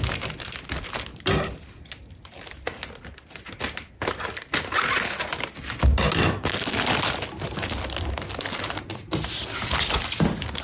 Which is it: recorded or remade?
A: recorded